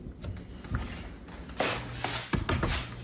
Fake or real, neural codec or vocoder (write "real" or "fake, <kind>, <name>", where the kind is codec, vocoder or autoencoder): real